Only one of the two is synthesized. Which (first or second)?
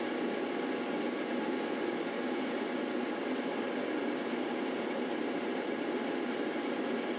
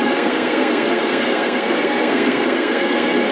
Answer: second